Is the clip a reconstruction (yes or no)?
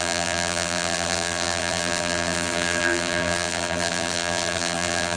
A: yes